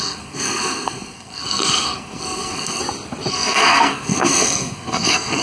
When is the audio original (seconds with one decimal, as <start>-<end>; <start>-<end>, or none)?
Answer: 2.8-3.3